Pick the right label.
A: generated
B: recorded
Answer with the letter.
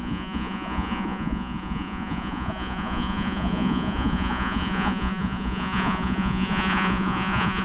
A